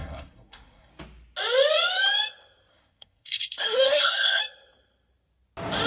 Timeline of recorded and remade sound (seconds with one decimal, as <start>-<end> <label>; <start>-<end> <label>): 0.0-0.9 remade; 0.9-2.7 recorded; 2.7-4.4 remade; 4.4-5.9 recorded